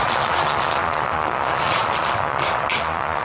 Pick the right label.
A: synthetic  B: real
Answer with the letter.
A